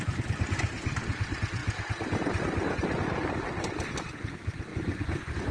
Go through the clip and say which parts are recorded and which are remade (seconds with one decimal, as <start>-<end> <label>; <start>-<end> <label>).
0.0-4.7 recorded; 4.7-5.5 remade